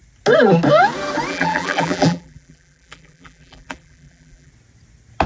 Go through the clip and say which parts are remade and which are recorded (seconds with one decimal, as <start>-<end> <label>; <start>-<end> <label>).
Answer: 0.0-1.3 recorded; 1.3-4.5 remade; 4.5-5.3 recorded